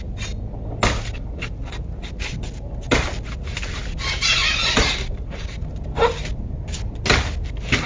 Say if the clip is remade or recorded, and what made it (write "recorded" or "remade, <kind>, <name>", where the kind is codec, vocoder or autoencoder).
recorded